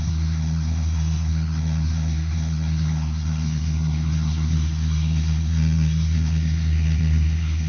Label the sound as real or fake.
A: fake